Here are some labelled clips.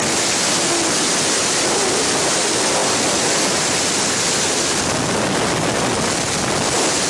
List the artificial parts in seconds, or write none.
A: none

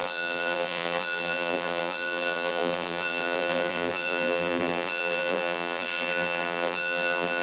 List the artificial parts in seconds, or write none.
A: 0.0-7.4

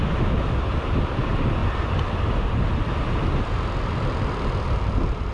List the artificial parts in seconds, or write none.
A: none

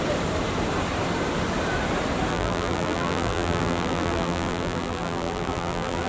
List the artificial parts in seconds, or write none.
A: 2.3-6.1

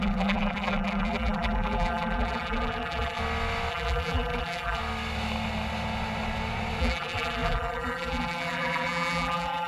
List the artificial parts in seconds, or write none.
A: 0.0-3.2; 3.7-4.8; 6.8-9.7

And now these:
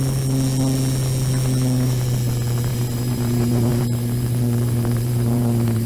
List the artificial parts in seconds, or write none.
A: 2.7-5.9

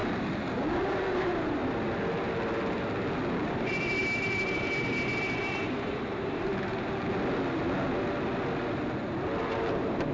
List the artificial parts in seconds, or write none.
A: 1.1-1.6; 3.3-6.5; 9.4-10.1